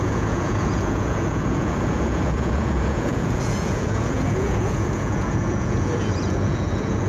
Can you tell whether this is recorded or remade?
remade